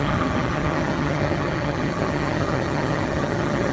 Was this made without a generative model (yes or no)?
no